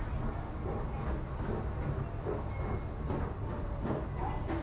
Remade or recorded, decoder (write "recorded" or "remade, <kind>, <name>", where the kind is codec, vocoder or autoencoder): recorded